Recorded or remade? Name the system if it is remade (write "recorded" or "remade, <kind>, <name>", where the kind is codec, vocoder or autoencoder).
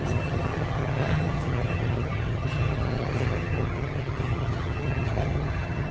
remade, vocoder, HiFi-GAN